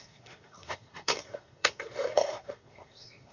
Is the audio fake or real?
fake